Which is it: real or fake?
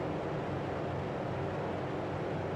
real